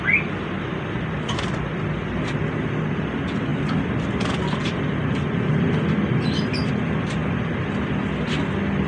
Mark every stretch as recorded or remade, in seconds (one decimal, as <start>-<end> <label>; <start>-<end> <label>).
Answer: 0.0-3.5 recorded; 3.5-6.7 remade; 6.7-8.9 recorded